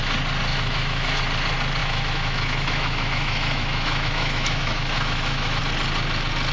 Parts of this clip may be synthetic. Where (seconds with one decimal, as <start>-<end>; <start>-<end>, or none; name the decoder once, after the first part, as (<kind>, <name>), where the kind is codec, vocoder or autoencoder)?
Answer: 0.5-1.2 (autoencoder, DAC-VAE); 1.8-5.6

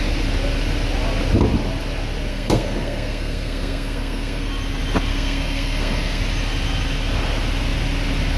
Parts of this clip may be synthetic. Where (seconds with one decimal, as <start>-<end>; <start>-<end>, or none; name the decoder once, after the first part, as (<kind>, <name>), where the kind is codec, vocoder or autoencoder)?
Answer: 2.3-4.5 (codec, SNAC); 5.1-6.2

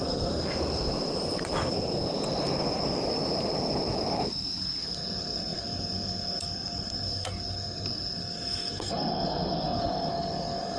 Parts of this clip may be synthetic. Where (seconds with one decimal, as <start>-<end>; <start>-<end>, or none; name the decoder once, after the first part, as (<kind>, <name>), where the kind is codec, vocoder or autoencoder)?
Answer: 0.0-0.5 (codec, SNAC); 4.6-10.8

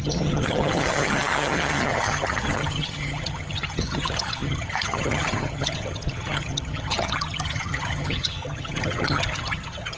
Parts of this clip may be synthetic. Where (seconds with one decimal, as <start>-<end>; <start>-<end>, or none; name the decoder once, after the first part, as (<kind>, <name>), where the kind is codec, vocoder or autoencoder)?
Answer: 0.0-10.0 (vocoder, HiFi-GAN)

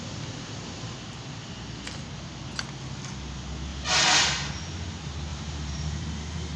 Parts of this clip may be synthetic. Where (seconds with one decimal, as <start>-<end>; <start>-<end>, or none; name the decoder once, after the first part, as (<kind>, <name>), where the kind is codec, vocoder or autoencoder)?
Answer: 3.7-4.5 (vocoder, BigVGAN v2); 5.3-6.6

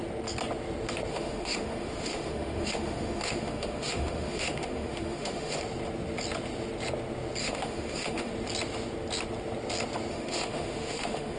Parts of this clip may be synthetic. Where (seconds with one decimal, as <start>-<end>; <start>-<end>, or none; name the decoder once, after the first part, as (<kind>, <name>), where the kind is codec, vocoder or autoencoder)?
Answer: 1.1-5.6 (autoencoder, DAC-VAE); 7.4-8.3; 10.1-11.4